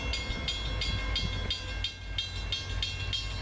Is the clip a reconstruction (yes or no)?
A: no